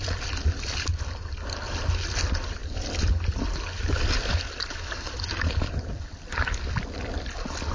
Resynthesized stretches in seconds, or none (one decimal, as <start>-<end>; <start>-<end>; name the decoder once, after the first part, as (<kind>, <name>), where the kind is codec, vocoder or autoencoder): none